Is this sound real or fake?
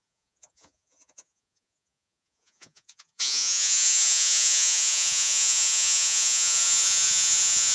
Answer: fake